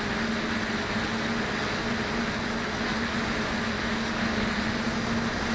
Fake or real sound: real